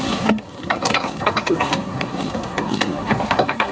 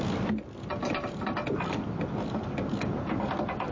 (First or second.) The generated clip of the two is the first